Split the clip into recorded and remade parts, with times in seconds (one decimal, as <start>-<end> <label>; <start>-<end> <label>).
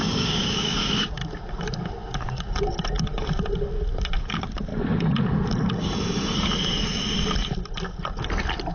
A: 0.0-1.2 remade; 1.2-4.2 recorded; 4.2-4.7 remade; 4.7-8.7 recorded